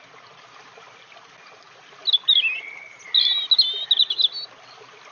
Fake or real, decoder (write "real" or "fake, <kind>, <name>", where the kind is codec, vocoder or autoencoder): real